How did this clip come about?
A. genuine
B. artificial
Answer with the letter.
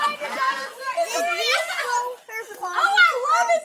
A